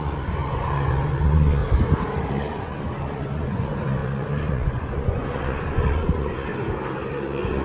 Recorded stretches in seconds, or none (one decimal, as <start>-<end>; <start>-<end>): 1.6-2.3; 6.5-7.1